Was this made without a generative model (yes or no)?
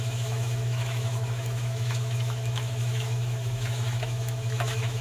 no